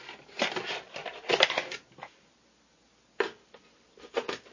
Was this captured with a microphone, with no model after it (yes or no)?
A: yes